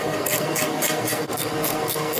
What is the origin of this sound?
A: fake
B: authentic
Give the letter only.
A